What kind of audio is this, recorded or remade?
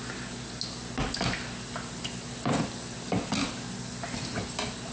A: recorded